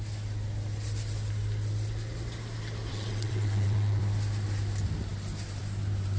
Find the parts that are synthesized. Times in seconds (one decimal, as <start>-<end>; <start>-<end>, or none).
2.9-4.0